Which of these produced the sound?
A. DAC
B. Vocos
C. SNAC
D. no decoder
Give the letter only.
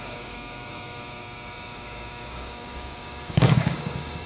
A